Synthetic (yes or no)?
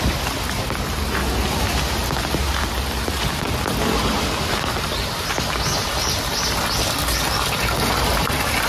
no